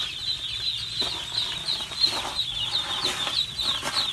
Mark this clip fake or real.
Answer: real